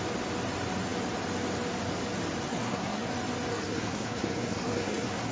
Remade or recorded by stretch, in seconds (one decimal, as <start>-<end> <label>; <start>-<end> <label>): 0.0-2.5 recorded; 2.5-3.1 remade; 3.1-3.5 recorded; 3.5-5.3 remade